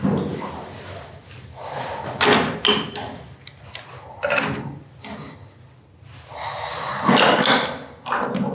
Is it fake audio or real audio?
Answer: real